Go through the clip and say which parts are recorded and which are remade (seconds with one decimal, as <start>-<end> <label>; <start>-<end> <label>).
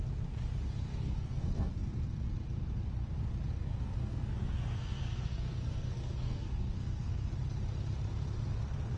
0.0-0.9 recorded; 0.9-1.7 remade; 1.7-3.6 recorded; 3.6-7.3 remade; 7.3-9.0 recorded